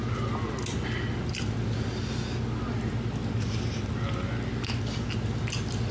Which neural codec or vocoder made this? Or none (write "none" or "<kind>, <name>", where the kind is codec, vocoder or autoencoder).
none